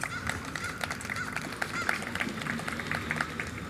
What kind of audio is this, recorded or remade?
recorded